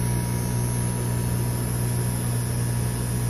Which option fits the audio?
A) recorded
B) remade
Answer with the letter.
A